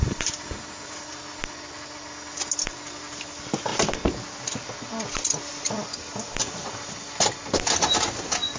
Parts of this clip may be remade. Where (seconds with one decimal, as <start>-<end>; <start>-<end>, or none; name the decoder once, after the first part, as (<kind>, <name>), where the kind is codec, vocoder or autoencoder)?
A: none